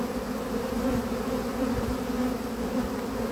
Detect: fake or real real